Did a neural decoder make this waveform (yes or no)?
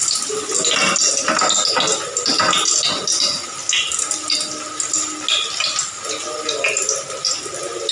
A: no